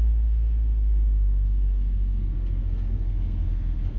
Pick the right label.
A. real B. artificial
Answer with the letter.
B